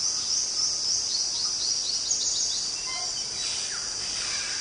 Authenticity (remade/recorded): recorded